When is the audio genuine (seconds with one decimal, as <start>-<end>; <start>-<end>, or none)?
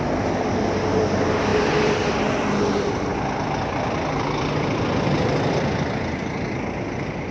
0.0-7.3